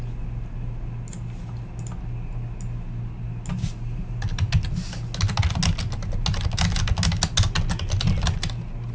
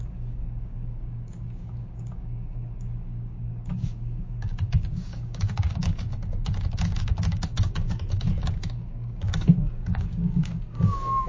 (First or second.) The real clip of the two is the first